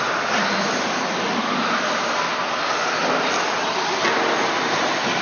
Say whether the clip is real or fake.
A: real